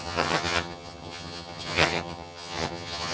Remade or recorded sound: remade